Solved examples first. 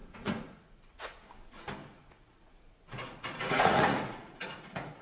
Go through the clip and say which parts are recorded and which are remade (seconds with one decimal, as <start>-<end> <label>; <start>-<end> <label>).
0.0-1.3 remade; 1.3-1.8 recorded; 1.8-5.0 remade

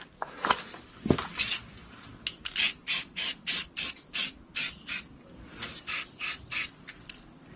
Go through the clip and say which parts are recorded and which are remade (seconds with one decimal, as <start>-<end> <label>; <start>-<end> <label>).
0.0-7.6 recorded

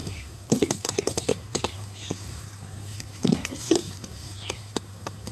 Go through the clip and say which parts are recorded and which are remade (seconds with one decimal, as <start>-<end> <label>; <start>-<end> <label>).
0.0-5.3 remade